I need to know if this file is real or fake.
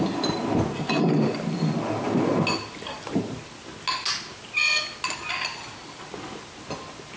real